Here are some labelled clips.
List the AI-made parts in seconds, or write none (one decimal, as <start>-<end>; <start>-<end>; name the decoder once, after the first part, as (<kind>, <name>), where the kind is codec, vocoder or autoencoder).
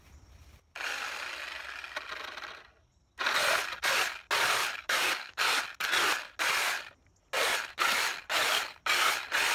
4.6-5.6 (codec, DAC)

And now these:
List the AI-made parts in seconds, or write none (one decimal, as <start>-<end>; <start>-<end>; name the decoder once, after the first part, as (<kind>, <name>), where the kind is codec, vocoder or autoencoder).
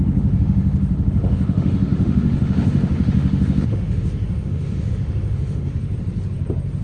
0.0-5.7 (autoencoder, DAC-VAE)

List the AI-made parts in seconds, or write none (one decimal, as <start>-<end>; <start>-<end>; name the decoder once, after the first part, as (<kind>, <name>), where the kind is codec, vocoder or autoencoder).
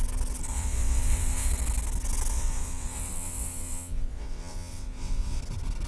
0.5-1.5 (vocoder, WaveNeXt); 2.3-5.4